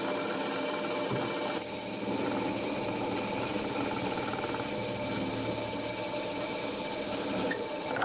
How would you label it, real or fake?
real